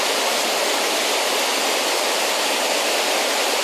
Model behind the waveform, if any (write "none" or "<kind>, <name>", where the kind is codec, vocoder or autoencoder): none